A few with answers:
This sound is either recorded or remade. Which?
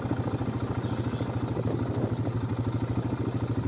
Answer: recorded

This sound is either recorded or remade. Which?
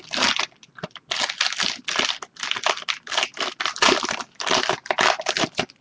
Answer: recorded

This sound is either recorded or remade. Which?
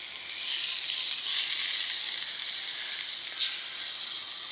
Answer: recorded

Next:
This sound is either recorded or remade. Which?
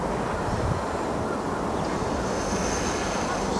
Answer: recorded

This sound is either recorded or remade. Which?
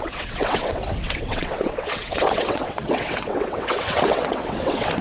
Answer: remade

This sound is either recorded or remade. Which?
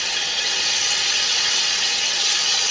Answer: remade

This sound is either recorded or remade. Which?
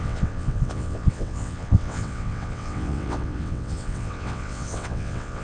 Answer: remade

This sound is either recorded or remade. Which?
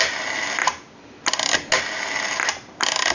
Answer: recorded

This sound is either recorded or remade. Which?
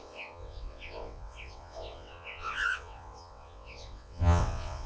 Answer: remade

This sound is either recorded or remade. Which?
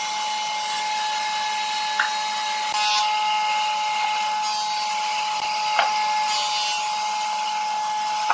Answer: recorded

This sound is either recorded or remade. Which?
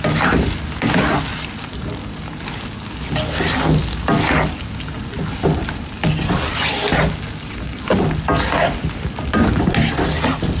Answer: recorded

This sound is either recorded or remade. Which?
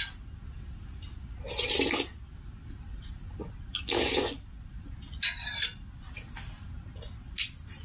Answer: recorded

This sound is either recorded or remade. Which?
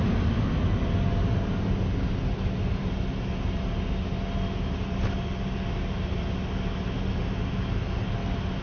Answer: recorded